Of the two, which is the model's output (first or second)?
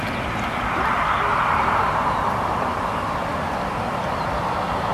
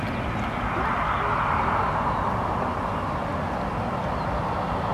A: first